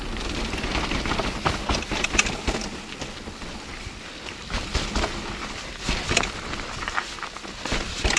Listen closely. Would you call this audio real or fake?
real